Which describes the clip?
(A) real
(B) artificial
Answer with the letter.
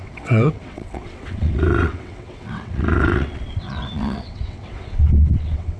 B